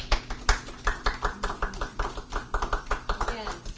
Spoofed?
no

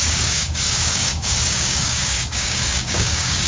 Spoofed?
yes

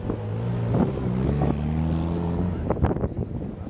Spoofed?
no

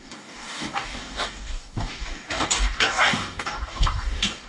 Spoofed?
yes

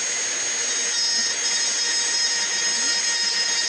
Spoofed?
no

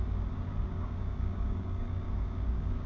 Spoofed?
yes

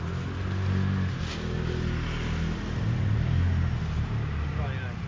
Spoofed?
no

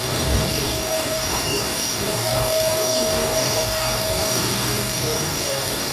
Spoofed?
yes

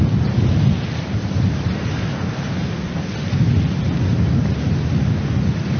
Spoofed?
no